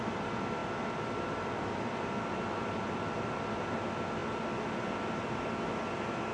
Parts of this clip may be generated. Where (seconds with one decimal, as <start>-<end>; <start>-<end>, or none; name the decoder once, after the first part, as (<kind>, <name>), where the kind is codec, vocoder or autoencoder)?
none